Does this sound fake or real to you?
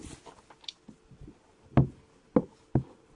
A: real